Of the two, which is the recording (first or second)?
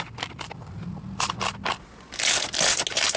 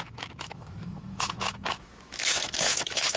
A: first